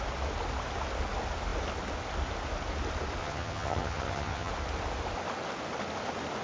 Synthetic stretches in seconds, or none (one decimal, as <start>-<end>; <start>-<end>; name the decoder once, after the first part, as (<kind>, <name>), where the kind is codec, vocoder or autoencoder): 3.2-4.5 (vocoder, HiFi-GAN)